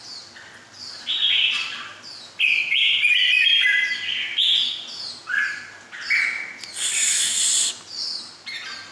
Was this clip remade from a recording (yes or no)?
no